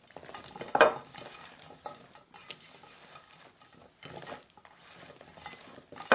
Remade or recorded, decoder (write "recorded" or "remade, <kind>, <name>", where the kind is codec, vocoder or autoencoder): recorded